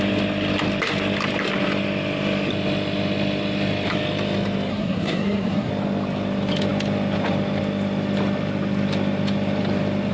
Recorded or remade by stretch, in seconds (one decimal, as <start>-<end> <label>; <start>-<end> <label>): 0.0-4.7 recorded; 4.7-5.7 remade; 5.7-10.1 recorded